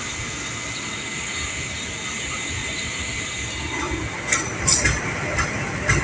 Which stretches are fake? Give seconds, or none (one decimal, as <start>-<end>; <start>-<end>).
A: none